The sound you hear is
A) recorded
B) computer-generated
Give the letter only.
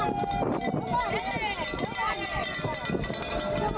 A